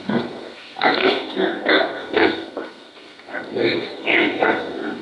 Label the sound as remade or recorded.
remade